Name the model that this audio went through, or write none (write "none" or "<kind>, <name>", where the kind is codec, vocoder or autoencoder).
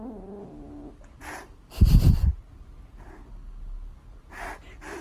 none